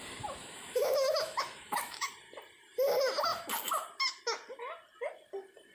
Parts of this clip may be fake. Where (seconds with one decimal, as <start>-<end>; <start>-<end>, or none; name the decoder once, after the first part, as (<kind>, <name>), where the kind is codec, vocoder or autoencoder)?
0.4-2.1 (autoencoder, DAC-VAE)